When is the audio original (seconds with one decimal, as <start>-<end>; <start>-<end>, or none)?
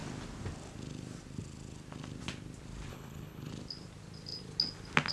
0.0-2.9; 3.5-5.1